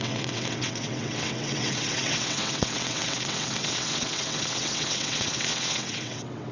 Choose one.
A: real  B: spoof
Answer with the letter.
B